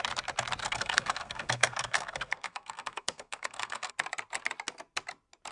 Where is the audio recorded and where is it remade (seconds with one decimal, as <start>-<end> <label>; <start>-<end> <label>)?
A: 0.0-0.6 recorded; 0.6-3.9 remade; 3.9-5.5 recorded